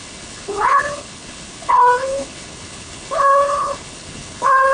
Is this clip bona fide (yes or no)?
no